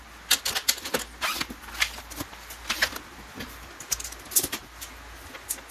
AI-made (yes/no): no